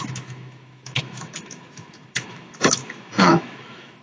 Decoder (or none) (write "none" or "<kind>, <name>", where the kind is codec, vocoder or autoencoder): autoencoder, DAC-VAE